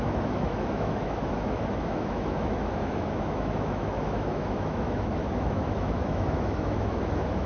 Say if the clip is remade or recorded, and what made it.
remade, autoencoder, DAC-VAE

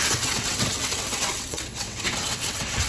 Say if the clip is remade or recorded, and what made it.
remade, vocoder, WaveNeXt